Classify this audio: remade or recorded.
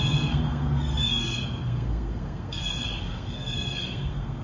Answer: remade